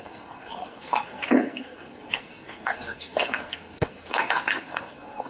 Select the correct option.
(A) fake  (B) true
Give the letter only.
A